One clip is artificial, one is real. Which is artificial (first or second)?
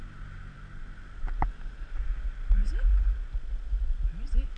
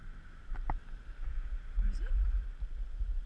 second